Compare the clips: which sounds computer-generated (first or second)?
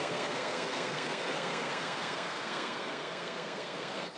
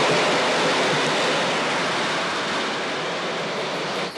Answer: first